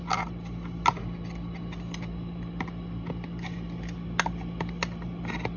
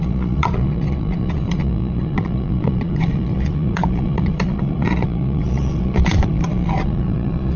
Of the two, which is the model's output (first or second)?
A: second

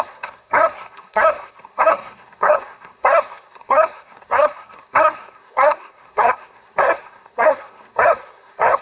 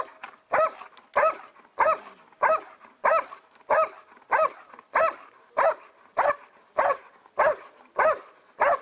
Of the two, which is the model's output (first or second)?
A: first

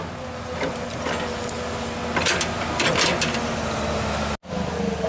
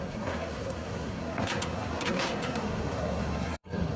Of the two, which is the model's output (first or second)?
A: second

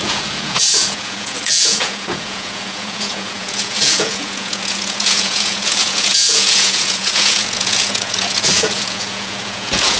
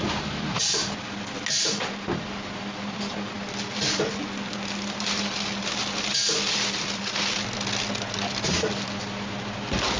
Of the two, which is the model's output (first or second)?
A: first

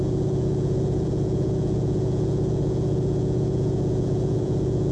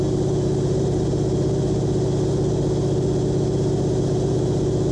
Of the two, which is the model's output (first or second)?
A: first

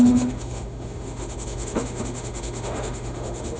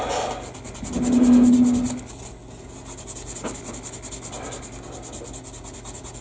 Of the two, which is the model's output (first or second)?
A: first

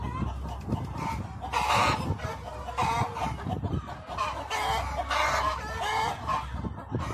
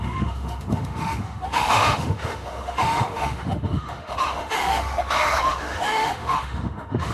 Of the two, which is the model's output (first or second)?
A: second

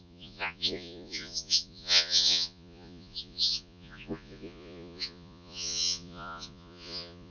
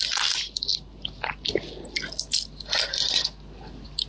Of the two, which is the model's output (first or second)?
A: first